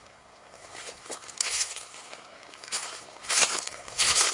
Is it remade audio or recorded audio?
remade